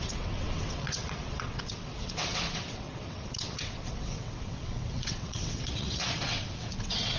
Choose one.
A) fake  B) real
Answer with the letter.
A